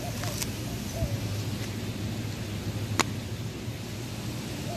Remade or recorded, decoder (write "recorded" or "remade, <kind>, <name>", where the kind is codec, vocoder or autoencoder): recorded